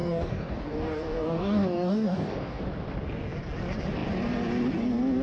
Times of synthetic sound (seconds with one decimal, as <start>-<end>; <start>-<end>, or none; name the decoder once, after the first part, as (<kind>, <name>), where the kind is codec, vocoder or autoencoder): 0.0-2.6 (codec, DAC)